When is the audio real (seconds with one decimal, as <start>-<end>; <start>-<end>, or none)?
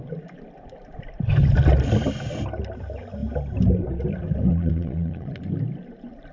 0.0-4.5; 5.4-6.3